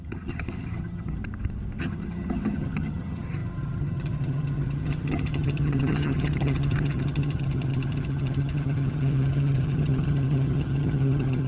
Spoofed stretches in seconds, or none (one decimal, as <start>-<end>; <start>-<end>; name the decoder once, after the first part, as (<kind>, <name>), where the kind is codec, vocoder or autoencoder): 0.0-1.2 (vocoder, HiFi-GAN); 1.8-11.5